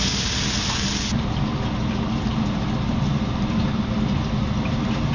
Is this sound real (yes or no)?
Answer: yes